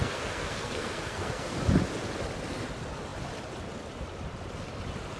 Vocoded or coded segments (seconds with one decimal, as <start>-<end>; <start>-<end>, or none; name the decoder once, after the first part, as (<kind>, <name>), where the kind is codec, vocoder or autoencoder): 0.0-1.6 (codec, SNAC)